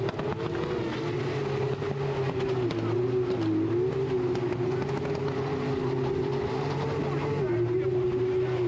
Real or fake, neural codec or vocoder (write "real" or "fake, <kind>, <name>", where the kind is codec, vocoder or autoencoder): real